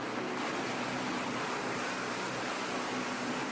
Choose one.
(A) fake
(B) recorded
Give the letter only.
B